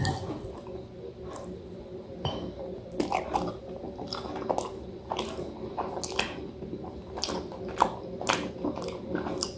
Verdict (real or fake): real